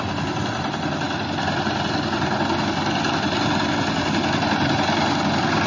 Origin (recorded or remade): recorded